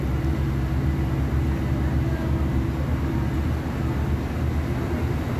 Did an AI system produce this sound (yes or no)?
no